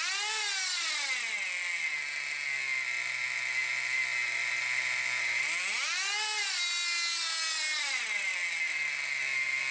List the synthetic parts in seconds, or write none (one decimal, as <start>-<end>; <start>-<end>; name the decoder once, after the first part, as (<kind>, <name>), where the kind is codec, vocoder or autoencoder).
none